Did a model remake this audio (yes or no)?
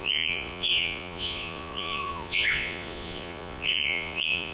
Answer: yes